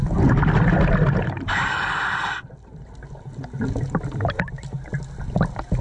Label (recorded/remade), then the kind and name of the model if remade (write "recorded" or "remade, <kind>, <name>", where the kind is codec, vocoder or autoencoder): recorded